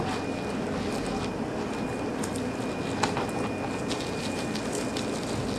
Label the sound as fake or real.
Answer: real